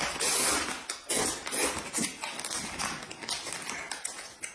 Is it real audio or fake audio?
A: real